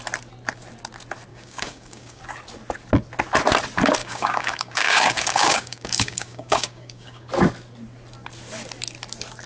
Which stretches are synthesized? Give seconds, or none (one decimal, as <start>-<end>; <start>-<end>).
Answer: 1.3-2.2; 4.0-7.3